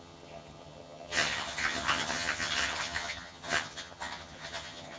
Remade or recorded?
remade